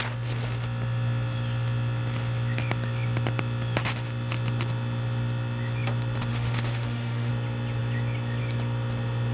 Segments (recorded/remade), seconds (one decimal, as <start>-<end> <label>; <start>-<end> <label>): 0.0-6.3 recorded; 6.3-7.3 remade; 7.3-9.3 recorded